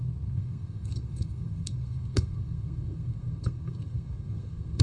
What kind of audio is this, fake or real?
fake